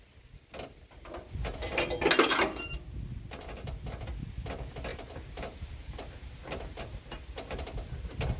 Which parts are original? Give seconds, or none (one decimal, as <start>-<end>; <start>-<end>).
0.0-4.9